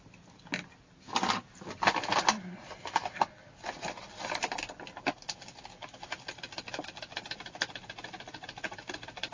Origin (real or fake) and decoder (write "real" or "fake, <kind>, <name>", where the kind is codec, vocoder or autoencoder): real